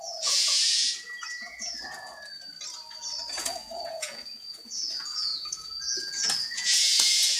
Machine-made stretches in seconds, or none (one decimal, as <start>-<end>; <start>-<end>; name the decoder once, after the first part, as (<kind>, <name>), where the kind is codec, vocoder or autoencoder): 0.0-2.2 (vocoder, Vocos); 3.4-7.4